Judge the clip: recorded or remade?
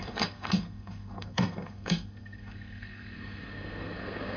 remade